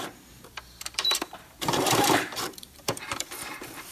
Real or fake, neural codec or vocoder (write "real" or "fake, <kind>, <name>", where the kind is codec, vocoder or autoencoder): fake, vocoder, BigVGAN v2